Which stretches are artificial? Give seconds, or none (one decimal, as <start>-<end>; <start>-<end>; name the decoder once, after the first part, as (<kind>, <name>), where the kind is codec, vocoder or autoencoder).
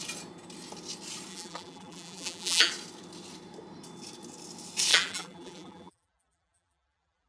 1.3-2.7 (vocoder, BigVGAN v2); 4.9-7.3